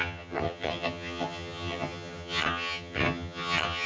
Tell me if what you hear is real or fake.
fake